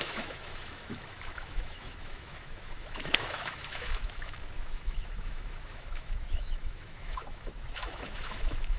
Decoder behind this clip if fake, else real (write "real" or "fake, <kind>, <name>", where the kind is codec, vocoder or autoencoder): fake, autoencoder, DAC-VAE